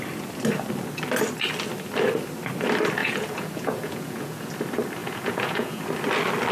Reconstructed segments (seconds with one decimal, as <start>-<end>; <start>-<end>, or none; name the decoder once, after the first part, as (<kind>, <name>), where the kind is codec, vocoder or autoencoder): 3.0-4.5 (vocoder, Vocos); 5.0-5.8